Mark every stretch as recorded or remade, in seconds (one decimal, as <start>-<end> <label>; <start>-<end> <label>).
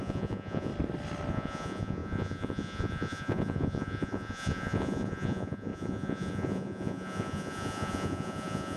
0.0-0.7 remade; 0.7-1.3 recorded; 1.3-8.8 remade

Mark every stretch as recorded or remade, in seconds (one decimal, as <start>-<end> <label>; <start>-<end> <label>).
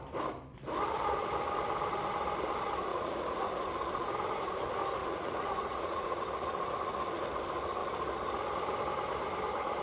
0.0-2.9 recorded; 2.9-3.5 remade; 3.5-5.0 recorded; 5.0-6.2 remade; 6.2-9.8 recorded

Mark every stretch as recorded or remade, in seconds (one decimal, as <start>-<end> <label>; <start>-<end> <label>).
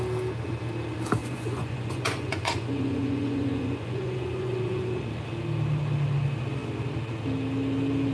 0.0-1.2 recorded; 1.2-5.1 remade; 5.1-8.1 recorded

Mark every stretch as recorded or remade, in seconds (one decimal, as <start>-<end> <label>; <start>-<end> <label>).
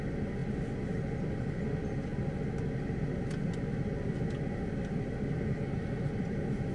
0.0-6.7 recorded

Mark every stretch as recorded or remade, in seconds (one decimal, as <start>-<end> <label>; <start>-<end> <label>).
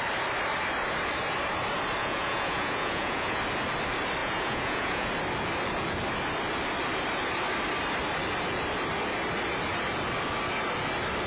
0.0-2.0 recorded; 2.0-3.4 remade; 3.4-4.2 recorded; 4.2-5.1 remade; 5.1-11.3 recorded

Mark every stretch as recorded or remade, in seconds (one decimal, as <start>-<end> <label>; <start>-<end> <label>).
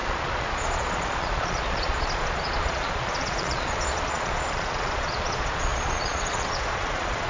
0.0-7.3 remade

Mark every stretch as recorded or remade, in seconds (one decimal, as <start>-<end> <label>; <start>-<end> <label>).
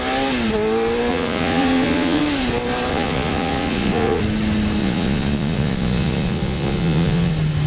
0.0-1.1 recorded; 1.1-2.2 remade; 2.2-2.9 recorded; 2.9-4.2 remade; 4.2-4.8 recorded; 4.8-7.3 remade; 7.3-7.7 recorded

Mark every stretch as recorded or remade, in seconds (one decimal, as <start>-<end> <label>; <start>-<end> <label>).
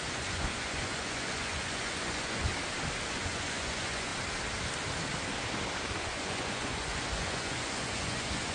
0.0-2.5 remade; 2.5-3.1 recorded; 3.1-4.1 remade; 4.1-6.0 recorded; 6.0-8.5 remade